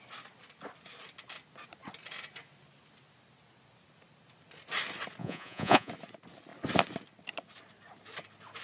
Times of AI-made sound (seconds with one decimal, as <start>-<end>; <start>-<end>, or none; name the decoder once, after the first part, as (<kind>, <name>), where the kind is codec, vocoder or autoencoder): 5.2-5.9 (vocoder, Vocos)